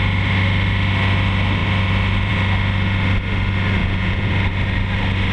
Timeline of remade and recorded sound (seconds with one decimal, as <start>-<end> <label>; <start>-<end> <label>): 0.0-3.8 recorded; 3.8-4.3 remade; 4.3-5.3 recorded